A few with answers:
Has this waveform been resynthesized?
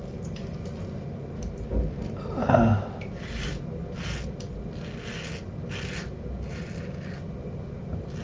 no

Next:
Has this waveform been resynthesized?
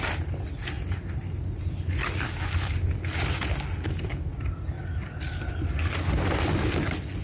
no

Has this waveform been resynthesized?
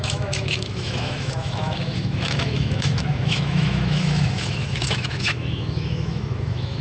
yes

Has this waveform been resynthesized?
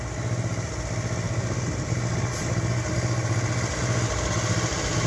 no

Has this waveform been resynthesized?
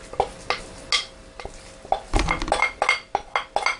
no